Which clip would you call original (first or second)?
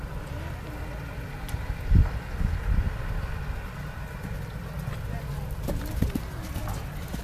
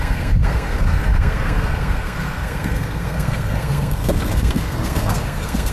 first